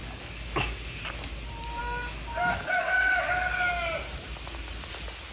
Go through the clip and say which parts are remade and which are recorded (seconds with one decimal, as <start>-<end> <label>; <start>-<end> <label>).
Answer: 0.0-1.0 remade; 1.0-1.8 recorded; 1.8-2.9 remade; 2.9-5.3 recorded